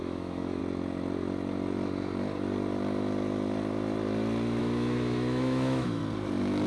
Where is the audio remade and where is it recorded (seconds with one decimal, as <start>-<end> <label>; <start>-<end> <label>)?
0.0-0.6 remade; 0.6-4.6 recorded; 4.6-6.0 remade; 6.0-6.7 recorded